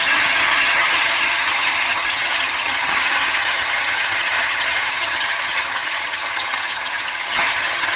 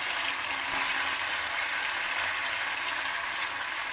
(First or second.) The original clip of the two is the second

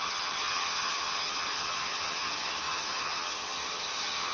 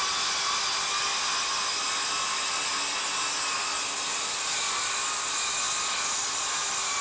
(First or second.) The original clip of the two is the second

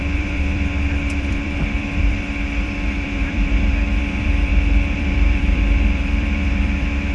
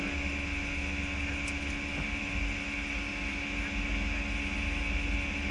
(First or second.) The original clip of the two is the second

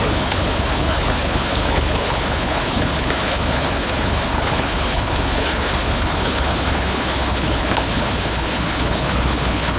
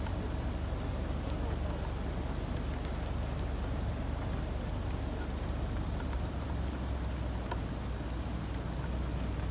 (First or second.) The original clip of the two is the second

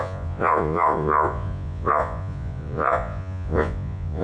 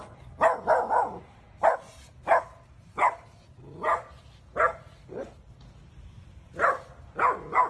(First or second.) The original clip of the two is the second